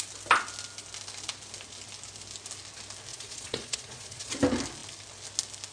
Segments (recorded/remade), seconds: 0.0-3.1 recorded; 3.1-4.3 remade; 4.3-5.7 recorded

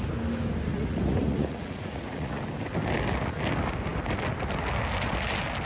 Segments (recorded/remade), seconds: 0.0-0.7 recorded; 0.7-2.4 remade; 2.4-5.7 recorded

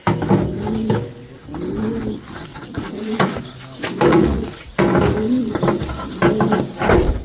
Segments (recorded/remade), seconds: 0.0-2.5 recorded; 2.5-3.0 remade; 3.0-4.1 recorded; 4.1-4.8 remade; 4.8-7.2 recorded

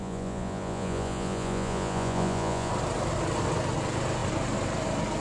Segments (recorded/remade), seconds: 0.0-2.7 remade; 2.7-5.2 recorded

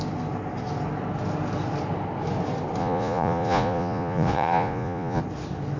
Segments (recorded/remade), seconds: 0.0-2.8 recorded; 2.8-5.2 remade; 5.2-5.8 recorded

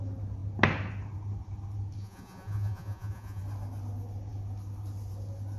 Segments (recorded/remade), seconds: 0.0-2.0 recorded; 2.0-3.4 remade; 3.4-5.6 recorded

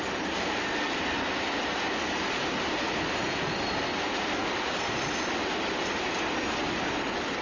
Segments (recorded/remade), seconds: 0.0-7.4 recorded